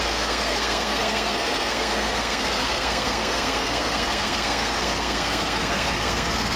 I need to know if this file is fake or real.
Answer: fake